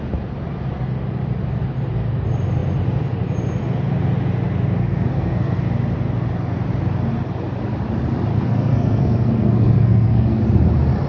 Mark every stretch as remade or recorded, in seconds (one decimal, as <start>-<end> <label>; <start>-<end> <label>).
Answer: 0.0-4.8 recorded; 4.8-5.6 remade; 5.6-8.3 recorded; 8.3-10.4 remade; 10.4-11.1 recorded